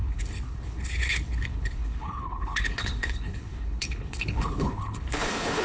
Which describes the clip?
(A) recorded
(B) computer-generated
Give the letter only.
B